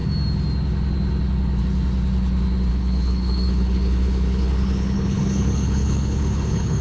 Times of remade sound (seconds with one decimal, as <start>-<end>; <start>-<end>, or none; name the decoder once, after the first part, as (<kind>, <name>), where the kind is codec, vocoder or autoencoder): 2.7-6.8 (codec, HILCodec)